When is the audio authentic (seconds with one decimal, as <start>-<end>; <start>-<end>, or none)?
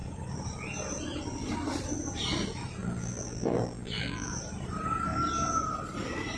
0.0-2.8; 4.3-6.4